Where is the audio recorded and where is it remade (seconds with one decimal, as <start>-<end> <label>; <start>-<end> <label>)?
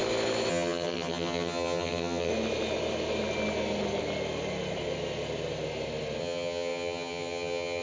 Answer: 0.0-0.5 recorded; 0.5-2.3 remade; 2.3-6.2 recorded; 6.2-7.8 remade